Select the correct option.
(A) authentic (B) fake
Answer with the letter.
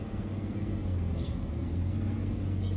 B